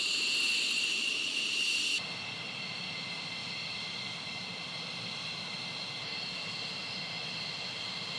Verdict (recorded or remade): recorded